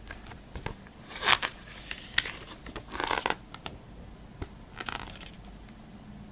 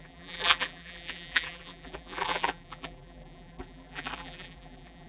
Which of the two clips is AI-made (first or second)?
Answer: second